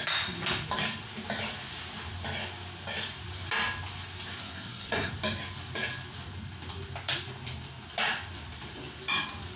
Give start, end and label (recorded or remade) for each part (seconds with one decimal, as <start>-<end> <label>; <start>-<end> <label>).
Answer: 0.0-4.4 recorded; 4.4-5.1 remade; 5.1-9.6 recorded